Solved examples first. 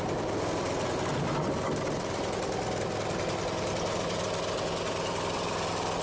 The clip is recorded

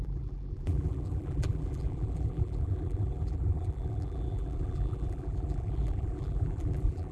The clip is remade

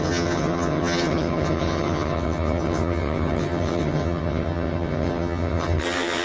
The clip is remade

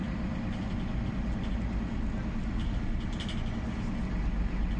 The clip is recorded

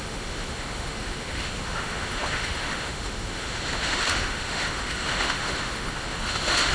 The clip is remade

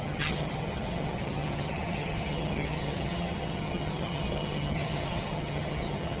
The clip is remade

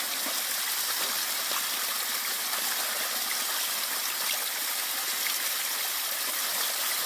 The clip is recorded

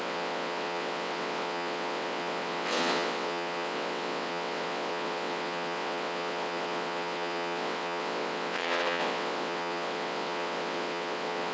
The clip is remade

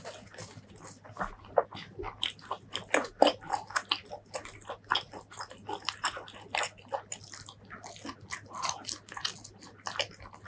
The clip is recorded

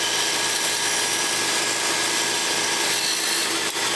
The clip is recorded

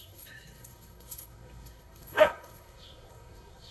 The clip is remade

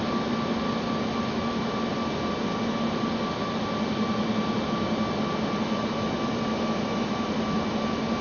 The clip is recorded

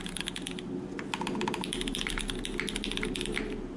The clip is recorded